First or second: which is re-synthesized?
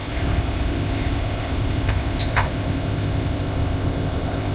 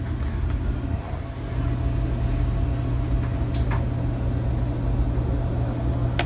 first